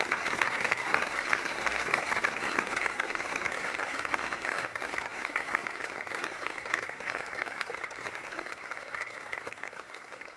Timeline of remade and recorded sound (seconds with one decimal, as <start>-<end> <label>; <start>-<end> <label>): 0.0-10.4 remade